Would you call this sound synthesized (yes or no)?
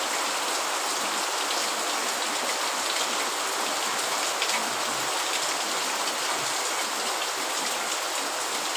no